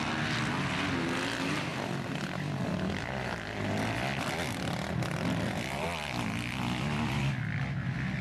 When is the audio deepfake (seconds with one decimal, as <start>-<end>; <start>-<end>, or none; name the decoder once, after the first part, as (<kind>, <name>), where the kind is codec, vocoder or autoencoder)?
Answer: none